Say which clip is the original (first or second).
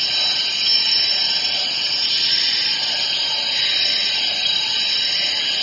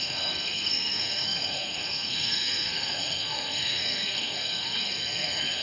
first